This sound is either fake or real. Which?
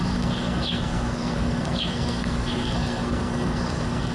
fake